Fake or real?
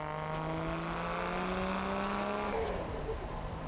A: real